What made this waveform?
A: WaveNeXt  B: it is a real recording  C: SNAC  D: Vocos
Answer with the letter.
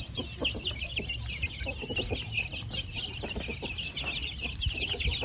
B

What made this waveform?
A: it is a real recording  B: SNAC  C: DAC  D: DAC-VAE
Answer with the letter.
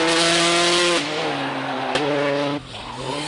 A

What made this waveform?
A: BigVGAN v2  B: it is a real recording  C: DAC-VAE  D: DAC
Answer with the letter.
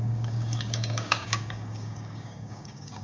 D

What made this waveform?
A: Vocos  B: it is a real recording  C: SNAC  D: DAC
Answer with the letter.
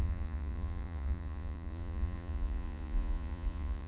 A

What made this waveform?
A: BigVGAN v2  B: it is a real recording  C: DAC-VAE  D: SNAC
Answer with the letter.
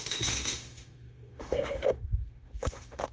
C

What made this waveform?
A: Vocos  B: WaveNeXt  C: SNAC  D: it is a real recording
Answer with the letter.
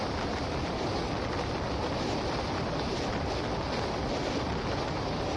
D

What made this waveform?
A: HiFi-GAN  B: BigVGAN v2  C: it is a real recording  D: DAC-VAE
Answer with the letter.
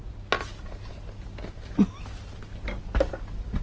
C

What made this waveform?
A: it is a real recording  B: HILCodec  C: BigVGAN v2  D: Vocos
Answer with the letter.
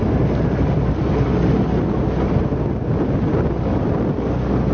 A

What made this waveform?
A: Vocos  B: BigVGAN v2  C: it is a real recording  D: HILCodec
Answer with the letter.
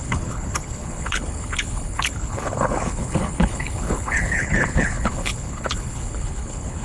D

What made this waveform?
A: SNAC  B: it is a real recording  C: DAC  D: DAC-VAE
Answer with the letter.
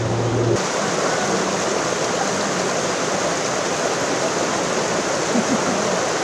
B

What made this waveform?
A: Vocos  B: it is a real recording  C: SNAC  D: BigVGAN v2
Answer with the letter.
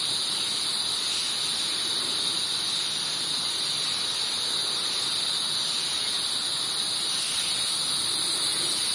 B